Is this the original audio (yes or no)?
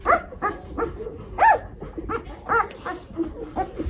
yes